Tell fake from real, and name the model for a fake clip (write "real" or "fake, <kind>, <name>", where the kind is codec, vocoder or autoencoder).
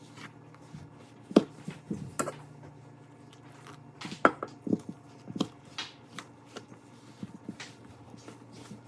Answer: real